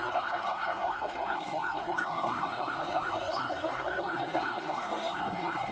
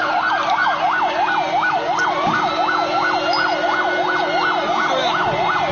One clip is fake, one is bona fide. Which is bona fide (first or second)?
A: second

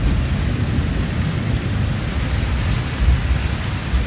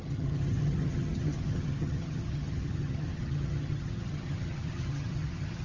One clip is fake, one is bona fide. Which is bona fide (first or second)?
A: first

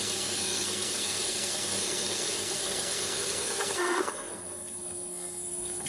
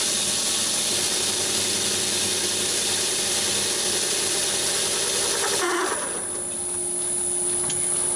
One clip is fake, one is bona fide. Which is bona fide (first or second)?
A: second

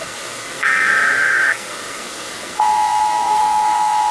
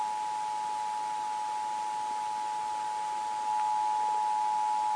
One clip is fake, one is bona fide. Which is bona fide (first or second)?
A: second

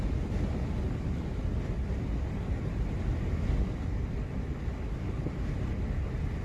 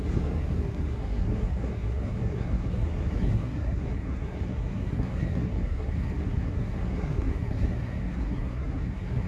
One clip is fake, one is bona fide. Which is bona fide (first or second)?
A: first